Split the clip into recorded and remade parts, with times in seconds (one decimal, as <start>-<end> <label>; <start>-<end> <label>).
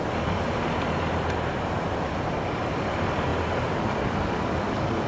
0.0-3.3 recorded; 3.3-3.9 remade; 3.9-5.1 recorded